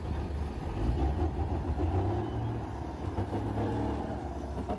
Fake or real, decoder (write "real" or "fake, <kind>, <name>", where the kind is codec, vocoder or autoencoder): real